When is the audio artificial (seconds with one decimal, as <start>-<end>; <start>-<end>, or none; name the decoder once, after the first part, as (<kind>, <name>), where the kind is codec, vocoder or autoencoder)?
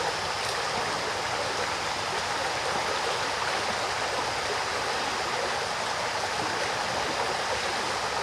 none